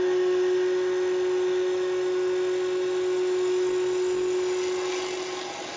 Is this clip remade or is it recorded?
recorded